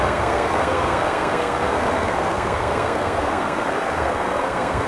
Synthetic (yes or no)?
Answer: yes